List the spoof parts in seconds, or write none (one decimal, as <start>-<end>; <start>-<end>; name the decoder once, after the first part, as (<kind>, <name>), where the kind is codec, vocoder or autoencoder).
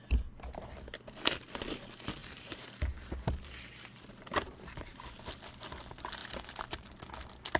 2.2-5.2 (vocoder, BigVGAN v2); 6.2-6.9